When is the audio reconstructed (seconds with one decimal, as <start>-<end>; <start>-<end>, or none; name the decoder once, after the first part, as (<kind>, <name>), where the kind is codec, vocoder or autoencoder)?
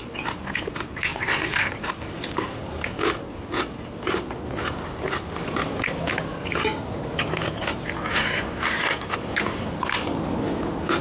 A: 1.1-2.7 (vocoder, BigVGAN v2)